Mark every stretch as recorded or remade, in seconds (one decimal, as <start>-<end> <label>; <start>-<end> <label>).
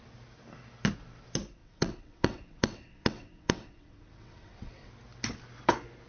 0.0-1.6 recorded; 1.6-4.9 remade; 4.9-6.1 recorded